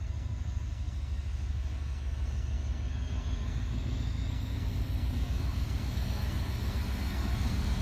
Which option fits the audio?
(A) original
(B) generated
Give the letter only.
B